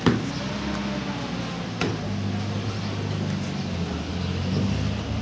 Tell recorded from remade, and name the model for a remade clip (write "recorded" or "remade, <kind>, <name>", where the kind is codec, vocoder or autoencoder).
recorded